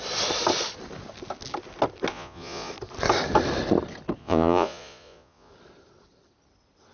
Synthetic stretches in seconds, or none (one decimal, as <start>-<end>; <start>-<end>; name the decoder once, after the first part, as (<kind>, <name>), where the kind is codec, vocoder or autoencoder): 2.1-2.7 (vocoder, Vocos); 4.2-5.5